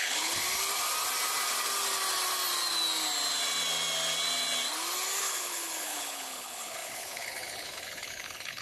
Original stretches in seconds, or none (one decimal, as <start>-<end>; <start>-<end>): 0.4-5.2